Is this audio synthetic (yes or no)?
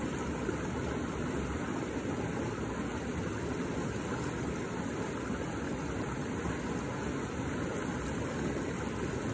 no